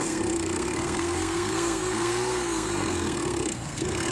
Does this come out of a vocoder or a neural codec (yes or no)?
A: yes